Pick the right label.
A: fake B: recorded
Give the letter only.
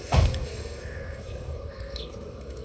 A